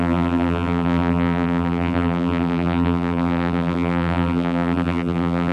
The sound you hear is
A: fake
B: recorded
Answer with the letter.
A